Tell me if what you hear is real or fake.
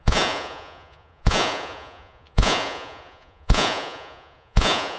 fake